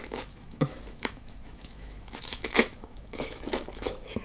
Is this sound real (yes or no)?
no